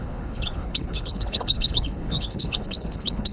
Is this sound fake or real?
fake